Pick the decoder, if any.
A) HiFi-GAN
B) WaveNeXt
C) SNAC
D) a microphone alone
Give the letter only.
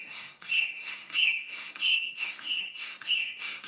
C